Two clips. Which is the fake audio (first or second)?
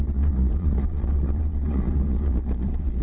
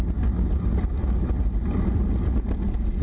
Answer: first